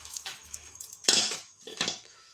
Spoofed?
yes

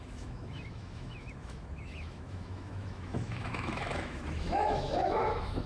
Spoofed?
yes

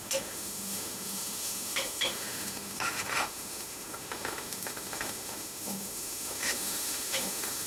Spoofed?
yes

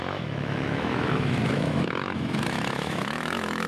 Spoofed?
yes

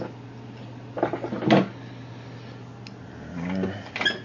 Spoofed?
no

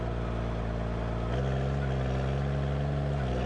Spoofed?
no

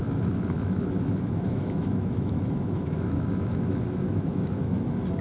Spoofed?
yes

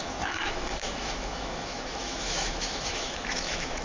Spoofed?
yes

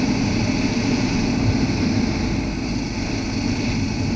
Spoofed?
no